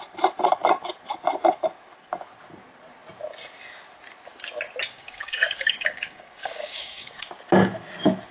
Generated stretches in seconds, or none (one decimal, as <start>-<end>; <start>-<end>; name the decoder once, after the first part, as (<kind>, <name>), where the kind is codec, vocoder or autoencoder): 4.8-7.3 (codec, DAC)